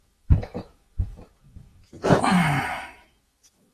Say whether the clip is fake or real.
fake